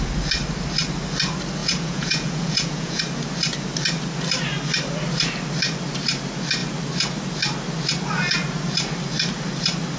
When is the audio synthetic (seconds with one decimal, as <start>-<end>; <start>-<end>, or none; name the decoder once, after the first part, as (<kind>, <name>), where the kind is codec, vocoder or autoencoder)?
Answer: 1.6-3.0 (vocoder, Vocos)